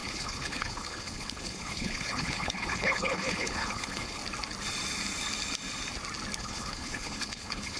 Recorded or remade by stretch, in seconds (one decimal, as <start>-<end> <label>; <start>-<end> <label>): 0.0-4.2 remade; 4.2-6.4 recorded; 6.4-7.8 remade

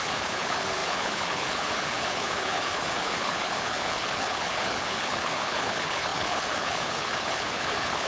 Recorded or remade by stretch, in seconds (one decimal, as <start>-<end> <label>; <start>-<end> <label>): 0.0-8.1 remade

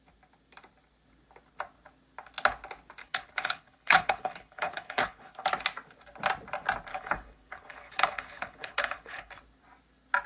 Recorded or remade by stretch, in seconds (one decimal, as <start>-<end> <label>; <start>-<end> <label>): 0.0-3.0 recorded; 3.0-5.3 remade; 5.3-6.9 recorded; 6.9-9.3 remade; 9.3-10.3 recorded

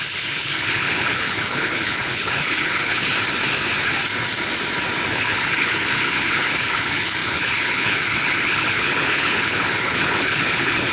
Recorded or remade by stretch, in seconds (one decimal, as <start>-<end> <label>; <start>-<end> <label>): 0.0-3.1 remade; 3.1-5.1 recorded; 5.1-10.9 remade